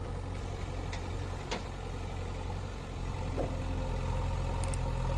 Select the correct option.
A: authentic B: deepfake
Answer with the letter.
A